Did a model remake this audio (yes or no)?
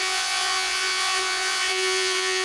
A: yes